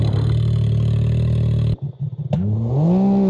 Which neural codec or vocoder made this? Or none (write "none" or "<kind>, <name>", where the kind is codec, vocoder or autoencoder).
none